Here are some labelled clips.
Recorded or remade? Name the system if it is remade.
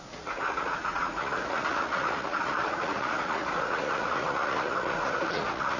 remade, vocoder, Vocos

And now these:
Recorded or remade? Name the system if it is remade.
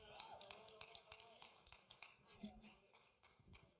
remade, codec, DAC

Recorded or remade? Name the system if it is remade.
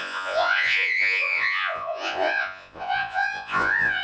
remade, vocoder, Vocos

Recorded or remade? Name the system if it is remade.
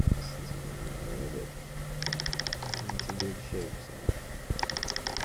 recorded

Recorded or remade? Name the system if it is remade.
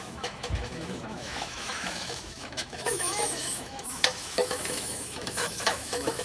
remade, autoencoder, DAC-VAE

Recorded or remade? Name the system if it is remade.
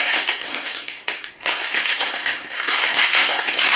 remade, codec, SNAC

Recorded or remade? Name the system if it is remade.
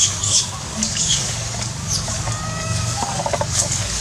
remade, codec, DAC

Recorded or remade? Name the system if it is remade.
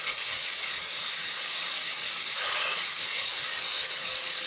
remade, codec, DAC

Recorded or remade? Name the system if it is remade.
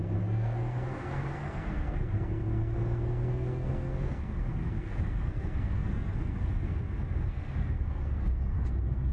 remade, codec, SNAC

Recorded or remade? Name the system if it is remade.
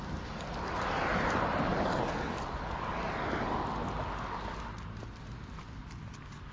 recorded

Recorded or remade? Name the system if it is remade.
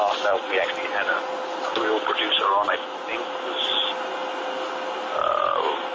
recorded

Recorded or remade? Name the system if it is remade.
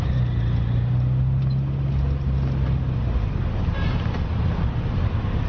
recorded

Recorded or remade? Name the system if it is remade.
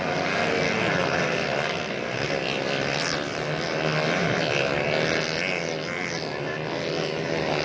recorded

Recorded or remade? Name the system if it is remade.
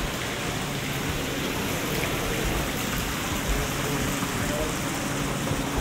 recorded